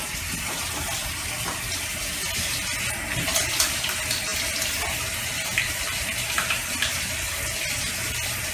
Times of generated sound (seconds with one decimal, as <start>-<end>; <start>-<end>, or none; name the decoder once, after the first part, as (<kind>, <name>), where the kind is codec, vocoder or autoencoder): none